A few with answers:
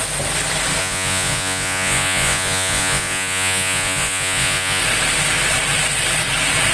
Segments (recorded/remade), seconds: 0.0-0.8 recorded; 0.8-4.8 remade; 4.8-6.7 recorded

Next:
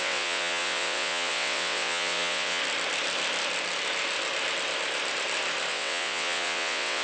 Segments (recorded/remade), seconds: 0.0-2.6 remade; 2.6-5.7 recorded; 5.7-7.0 remade

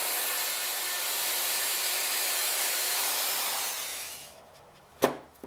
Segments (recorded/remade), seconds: 0.0-1.7 recorded; 1.7-3.2 remade; 3.2-3.9 recorded; 3.9-5.5 remade

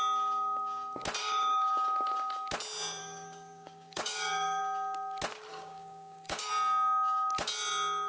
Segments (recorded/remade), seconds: 0.0-1.2 recorded; 1.2-1.7 remade; 1.7-3.0 recorded; 3.0-4.6 remade; 4.6-5.5 recorded; 5.5-6.5 remade; 6.5-8.1 recorded

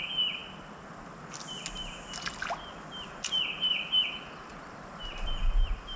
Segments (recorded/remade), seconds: 0.0-6.0 recorded

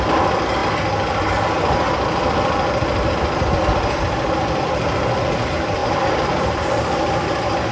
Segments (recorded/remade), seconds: 0.0-5.8 recorded; 5.8-6.6 remade; 6.6-7.7 recorded